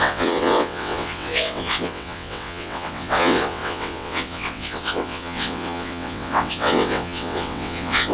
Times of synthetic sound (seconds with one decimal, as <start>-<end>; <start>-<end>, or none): 0.0-8.1